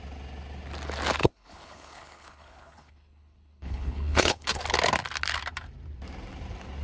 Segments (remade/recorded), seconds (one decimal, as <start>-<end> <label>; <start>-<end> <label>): 0.0-1.2 recorded; 1.2-4.6 remade; 4.6-6.8 recorded